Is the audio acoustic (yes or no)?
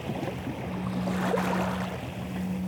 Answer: yes